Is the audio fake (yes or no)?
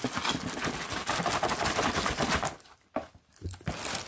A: no